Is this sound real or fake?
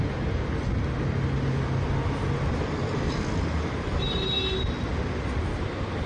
real